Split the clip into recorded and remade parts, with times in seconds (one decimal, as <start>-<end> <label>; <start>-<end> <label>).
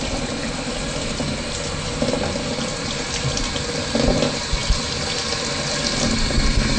0.0-6.8 recorded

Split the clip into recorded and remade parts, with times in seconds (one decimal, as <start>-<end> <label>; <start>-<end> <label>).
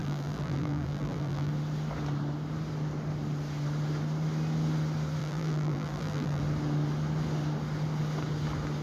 0.0-1.5 remade; 1.5-5.2 recorded; 5.2-6.4 remade; 6.4-8.8 recorded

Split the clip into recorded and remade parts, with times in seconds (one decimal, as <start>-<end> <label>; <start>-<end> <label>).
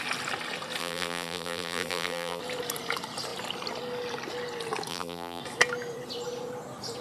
0.0-0.8 recorded; 0.8-2.4 remade; 2.4-4.9 recorded; 4.9-5.4 remade; 5.4-7.0 recorded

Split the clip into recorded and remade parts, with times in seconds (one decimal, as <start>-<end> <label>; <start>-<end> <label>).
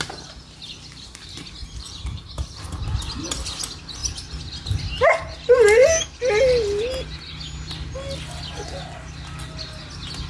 0.0-1.6 recorded; 1.6-2.8 remade; 2.8-10.3 recorded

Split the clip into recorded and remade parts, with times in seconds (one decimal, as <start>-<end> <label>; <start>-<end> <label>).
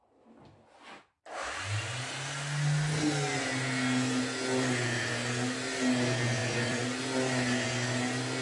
0.0-6.4 recorded; 6.4-7.0 remade; 7.0-8.4 recorded